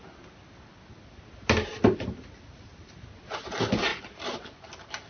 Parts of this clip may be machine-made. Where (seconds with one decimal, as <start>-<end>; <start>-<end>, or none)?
none